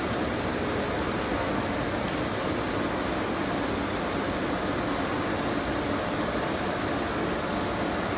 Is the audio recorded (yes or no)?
yes